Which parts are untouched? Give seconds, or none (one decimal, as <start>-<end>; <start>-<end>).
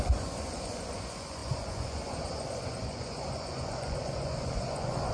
none